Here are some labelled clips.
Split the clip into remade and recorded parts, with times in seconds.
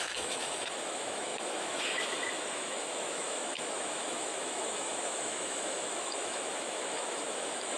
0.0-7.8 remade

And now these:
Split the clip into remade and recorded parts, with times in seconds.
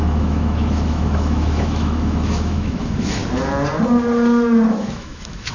0.0-3.2 remade; 3.2-4.7 recorded; 4.7-5.5 remade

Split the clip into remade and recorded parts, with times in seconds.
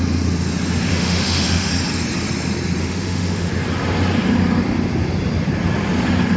0.0-0.9 recorded; 0.9-1.7 remade; 1.7-2.8 recorded; 2.8-3.5 remade; 3.5-6.4 recorded